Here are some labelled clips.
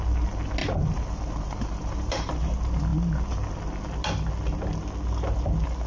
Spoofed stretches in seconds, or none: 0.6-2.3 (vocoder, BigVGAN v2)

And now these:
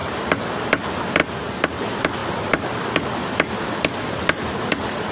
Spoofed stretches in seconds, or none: 0.0-0.7 (vocoder, BigVGAN v2)

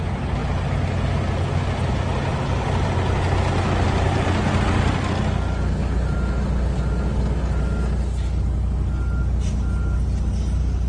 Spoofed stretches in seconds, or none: none

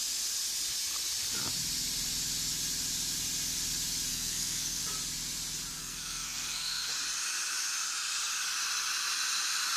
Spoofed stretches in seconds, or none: 4.1-4.8 (codec, SNAC); 5.8-6.9

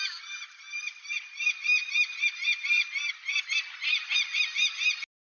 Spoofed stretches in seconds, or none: none